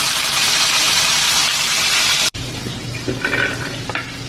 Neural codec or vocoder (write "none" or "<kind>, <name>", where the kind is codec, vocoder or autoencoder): vocoder, BigVGAN v2